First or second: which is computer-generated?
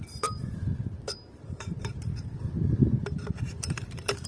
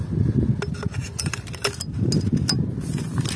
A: first